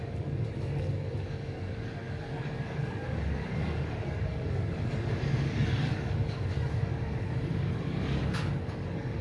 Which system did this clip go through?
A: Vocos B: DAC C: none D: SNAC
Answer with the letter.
B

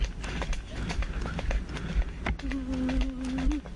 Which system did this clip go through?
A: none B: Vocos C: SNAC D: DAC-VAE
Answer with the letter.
A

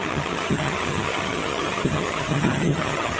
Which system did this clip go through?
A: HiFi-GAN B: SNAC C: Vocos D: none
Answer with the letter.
A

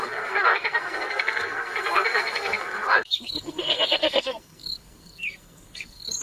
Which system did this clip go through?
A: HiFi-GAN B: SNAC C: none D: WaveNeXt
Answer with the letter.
B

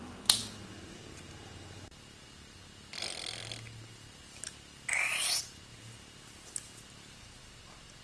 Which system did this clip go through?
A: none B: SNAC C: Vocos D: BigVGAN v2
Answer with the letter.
A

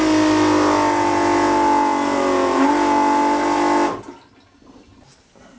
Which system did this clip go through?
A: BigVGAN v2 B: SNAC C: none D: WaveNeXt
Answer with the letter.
C